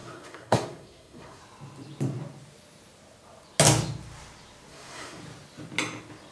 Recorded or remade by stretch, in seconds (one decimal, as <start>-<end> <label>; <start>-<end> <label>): 0.0-1.4 remade; 1.4-4.7 recorded; 4.7-5.2 remade; 5.2-6.3 recorded